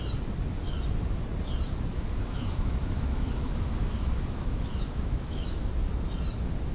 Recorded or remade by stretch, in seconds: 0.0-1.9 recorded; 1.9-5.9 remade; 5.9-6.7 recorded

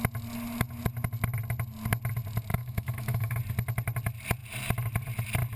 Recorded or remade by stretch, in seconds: 0.0-2.5 recorded; 2.5-3.4 remade; 3.4-5.6 recorded

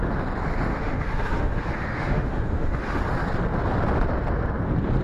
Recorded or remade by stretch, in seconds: 0.0-0.7 recorded; 0.7-3.0 remade; 3.0-5.0 recorded

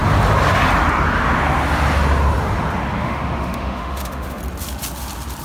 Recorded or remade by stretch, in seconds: 0.0-3.0 recorded; 3.0-4.4 remade; 4.4-5.4 recorded

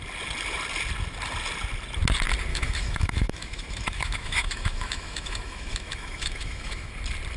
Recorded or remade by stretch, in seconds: 0.0-2.5 recorded; 2.5-6.9 remade; 6.9-7.4 recorded

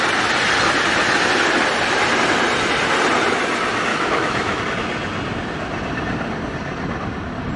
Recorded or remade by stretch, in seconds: 0.0-3.9 recorded; 3.9-4.6 remade; 4.6-7.6 recorded

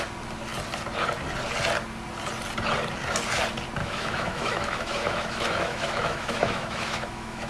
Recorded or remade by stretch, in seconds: 0.0-3.8 recorded; 3.8-7.5 remade